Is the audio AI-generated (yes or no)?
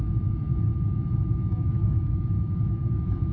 yes